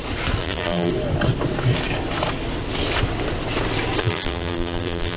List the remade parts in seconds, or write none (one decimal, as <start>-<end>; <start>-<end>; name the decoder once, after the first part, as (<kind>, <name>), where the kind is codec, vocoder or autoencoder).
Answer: 0.4-0.9 (vocoder, BigVGAN v2); 4.0-5.2